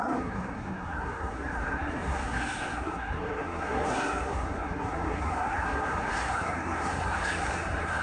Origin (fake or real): fake